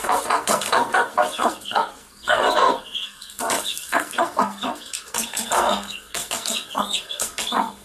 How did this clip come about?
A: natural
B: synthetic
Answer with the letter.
B